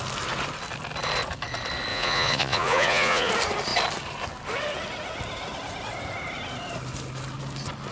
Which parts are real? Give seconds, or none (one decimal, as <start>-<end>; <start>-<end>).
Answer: 0.0-1.9; 3.3-7.9